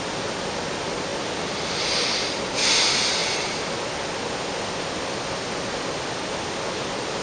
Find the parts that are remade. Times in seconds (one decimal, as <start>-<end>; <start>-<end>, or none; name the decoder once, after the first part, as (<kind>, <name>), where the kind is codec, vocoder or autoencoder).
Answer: none